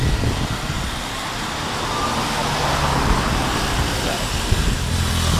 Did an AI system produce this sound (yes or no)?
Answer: no